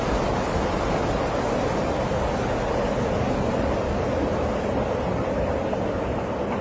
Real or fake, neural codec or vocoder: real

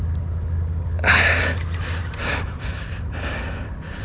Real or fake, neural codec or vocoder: real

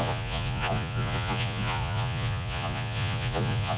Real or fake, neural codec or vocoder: fake, vocoder, Vocos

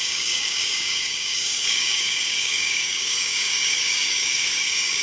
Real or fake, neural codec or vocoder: fake, codec, DAC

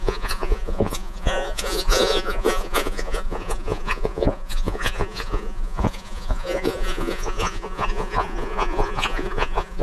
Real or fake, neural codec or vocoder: fake, vocoder, Vocos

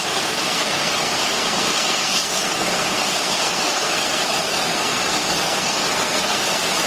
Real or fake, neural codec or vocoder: fake, codec, SNAC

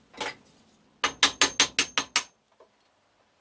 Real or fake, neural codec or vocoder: real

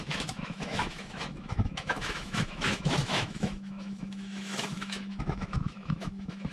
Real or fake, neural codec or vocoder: fake, autoencoder, DAC-VAE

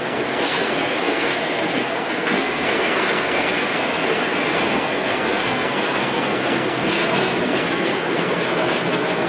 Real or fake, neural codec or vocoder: fake, codec, SNAC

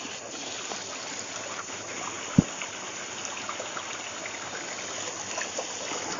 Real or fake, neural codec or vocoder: real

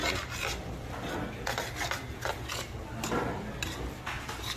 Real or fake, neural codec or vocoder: real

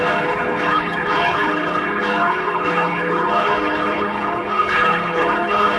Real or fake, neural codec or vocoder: fake, codec, HILCodec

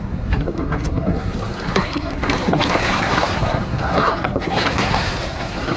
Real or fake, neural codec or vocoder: fake, codec, SNAC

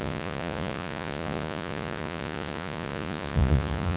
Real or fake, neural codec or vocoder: fake, vocoder, Vocos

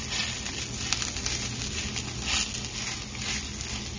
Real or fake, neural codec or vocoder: real